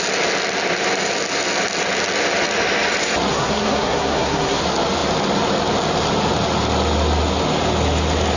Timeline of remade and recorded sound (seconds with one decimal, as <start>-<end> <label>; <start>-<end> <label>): 0.0-3.3 recorded; 3.3-4.6 remade; 4.6-8.4 recorded